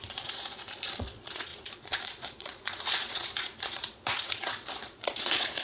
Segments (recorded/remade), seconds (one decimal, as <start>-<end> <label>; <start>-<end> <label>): 0.0-5.6 remade